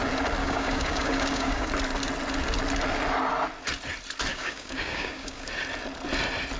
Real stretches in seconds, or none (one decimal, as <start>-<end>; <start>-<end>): 0.0-0.4; 1.7-4.3; 5.5-6.6